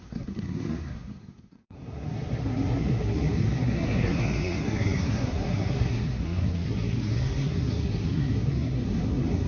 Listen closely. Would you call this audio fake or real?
fake